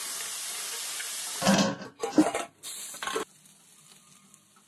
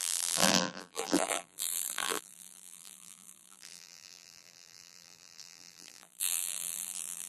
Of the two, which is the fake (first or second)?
second